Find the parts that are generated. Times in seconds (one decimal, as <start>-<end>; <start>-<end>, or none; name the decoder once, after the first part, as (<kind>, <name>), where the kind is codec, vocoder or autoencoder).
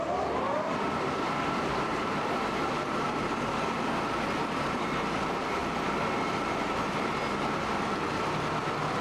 1.9-3.9 (vocoder, BigVGAN v2)